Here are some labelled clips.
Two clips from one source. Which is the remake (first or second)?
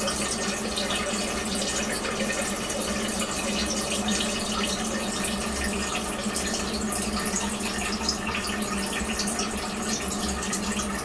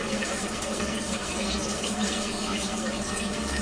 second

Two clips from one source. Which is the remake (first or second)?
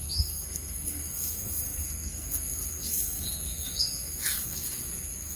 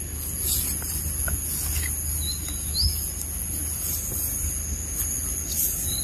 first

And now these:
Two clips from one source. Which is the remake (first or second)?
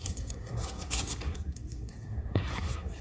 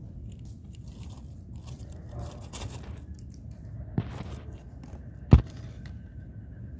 first